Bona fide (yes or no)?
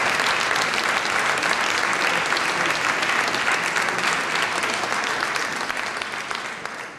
yes